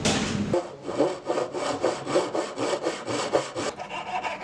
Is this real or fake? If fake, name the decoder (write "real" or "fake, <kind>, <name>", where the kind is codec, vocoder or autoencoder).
real